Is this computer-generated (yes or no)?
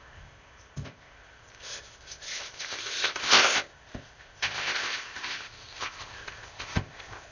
yes